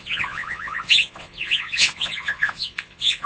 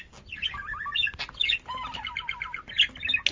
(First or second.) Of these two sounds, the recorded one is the second